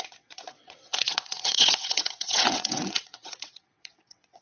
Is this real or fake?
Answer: fake